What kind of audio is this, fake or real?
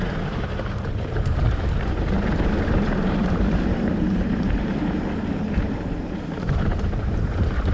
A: fake